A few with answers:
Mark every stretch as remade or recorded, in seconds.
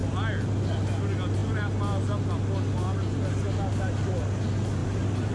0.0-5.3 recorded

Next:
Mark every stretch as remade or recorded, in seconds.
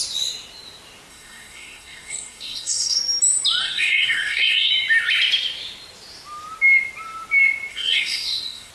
0.0-1.1 recorded; 1.1-3.0 remade; 3.0-3.6 recorded; 3.6-4.7 remade; 4.7-7.7 recorded; 7.7-8.7 remade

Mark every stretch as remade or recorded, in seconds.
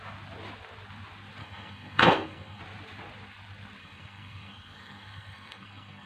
0.0-1.4 recorded; 1.4-2.6 remade; 2.6-3.8 recorded; 3.8-6.1 remade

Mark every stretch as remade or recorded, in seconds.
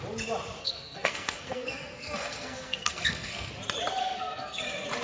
0.0-0.6 recorded; 0.6-3.5 remade; 3.5-4.0 recorded; 4.0-4.6 remade; 4.6-5.0 recorded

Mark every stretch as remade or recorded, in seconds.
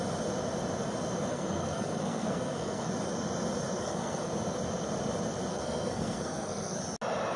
0.0-1.3 recorded; 1.3-2.9 remade; 2.9-3.8 recorded; 3.8-4.3 remade; 4.3-5.5 recorded; 5.5-6.8 remade; 6.8-7.4 recorded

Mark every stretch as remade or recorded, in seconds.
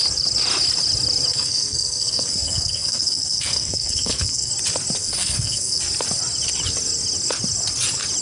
0.0-1.3 recorded; 1.3-4.5 remade; 4.5-5.0 recorded; 5.0-5.8 remade; 5.8-8.2 recorded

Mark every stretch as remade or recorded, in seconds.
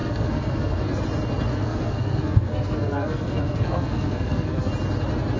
0.0-1.0 remade; 1.0-1.5 recorded; 1.5-4.7 remade; 4.7-5.4 recorded